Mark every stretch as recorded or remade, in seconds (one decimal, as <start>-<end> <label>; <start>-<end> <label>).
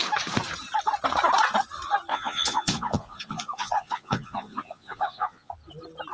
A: 0.0-2.1 recorded; 2.1-5.5 remade; 5.5-6.1 recorded